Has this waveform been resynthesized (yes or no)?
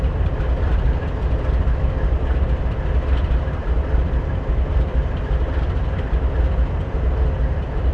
yes